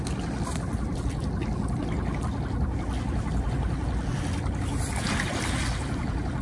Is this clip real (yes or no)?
yes